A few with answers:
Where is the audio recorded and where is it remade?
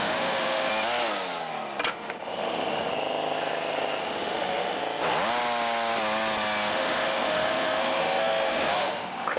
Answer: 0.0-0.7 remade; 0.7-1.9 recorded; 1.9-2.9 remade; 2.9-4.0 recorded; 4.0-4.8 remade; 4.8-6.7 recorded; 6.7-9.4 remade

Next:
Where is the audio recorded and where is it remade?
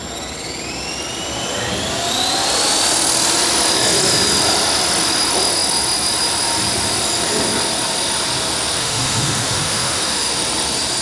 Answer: 0.0-8.8 recorded; 8.8-10.3 remade; 10.3-11.0 recorded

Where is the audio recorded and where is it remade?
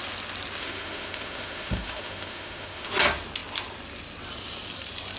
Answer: 0.0-0.6 recorded; 0.6-2.9 remade; 2.9-5.2 recorded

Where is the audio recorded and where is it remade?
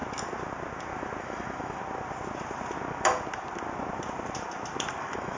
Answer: 0.0-1.2 recorded; 1.2-1.8 remade; 1.8-5.0 recorded; 5.0-5.4 remade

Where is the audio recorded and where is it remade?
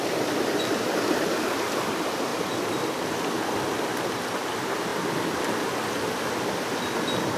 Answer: 0.0-7.4 recorded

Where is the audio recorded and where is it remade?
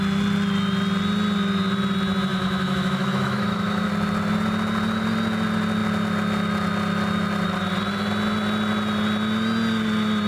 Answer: 0.0-2.3 recorded; 2.3-3.9 remade; 3.9-10.3 recorded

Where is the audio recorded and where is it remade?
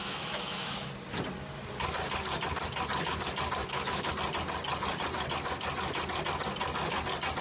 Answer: 0.0-0.9 remade; 0.9-3.6 recorded; 3.6-4.1 remade; 4.1-7.4 recorded